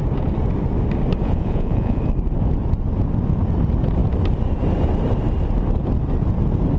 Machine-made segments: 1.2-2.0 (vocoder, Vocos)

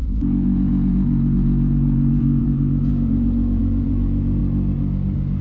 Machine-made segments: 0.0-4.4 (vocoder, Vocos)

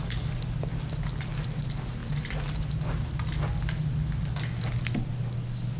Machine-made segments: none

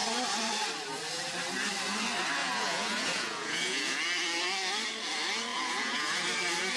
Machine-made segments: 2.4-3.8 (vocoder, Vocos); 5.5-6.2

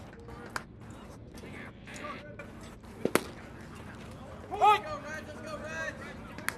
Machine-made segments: none

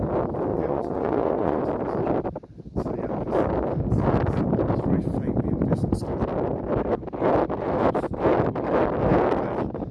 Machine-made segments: 0.5-1.6 (vocoder, Vocos)